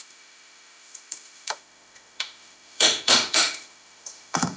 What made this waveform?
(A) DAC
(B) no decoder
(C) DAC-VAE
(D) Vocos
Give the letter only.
C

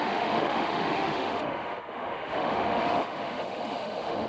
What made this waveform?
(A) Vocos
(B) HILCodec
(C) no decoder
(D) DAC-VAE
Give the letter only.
D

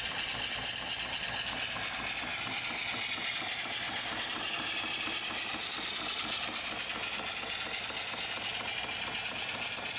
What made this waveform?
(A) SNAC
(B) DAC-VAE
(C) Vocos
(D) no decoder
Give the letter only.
D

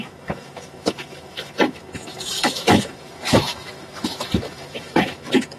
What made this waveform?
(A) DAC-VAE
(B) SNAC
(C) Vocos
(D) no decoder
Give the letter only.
A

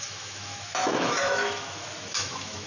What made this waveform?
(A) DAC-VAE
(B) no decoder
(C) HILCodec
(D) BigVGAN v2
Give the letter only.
A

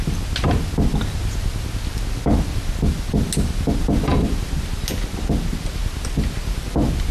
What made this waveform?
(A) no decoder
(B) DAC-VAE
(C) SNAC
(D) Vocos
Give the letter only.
A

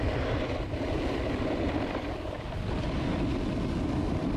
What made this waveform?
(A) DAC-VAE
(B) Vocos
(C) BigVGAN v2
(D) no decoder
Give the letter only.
D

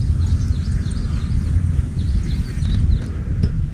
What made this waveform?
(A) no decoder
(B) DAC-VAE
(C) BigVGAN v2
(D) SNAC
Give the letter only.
A